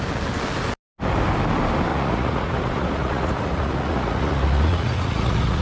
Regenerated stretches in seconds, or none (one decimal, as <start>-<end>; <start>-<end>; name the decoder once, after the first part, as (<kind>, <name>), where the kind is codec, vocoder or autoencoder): 1.9-5.6 (vocoder, Vocos)